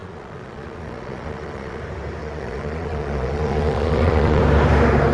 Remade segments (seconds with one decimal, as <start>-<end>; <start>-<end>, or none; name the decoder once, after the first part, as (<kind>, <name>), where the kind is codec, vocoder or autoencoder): 0.0-1.8 (vocoder, Vocos); 2.2-4.4